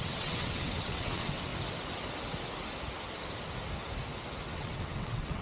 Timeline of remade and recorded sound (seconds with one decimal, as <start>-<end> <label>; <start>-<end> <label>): 0.0-1.5 remade; 1.5-4.5 recorded; 4.5-5.4 remade